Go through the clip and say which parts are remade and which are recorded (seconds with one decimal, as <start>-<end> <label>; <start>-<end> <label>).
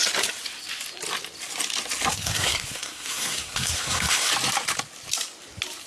0.0-2.1 recorded; 2.1-4.3 remade; 4.3-5.9 recorded